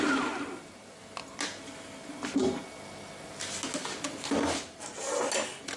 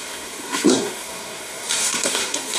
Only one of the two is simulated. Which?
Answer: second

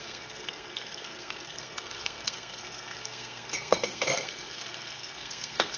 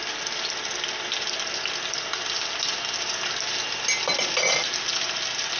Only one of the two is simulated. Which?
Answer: first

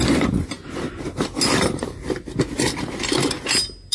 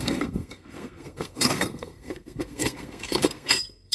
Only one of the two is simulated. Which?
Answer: second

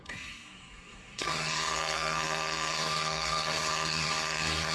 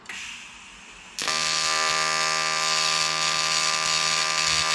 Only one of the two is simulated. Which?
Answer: first